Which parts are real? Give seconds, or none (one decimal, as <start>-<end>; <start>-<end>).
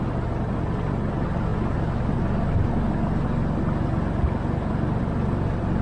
0.0-5.8